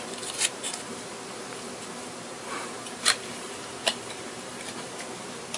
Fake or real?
fake